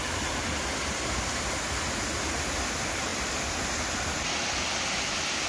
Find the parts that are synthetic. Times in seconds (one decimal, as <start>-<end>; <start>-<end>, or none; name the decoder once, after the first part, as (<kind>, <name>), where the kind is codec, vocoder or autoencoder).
none